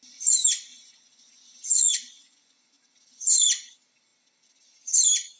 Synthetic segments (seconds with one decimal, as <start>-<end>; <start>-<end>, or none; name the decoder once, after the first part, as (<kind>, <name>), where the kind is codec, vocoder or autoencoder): 0.7-2.7 (vocoder, Vocos)